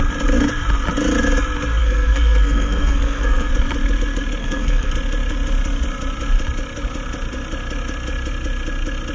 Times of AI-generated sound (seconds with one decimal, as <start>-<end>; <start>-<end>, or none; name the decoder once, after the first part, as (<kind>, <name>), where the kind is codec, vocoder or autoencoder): 1.8-3.5 (codec, SNAC); 4.4-4.9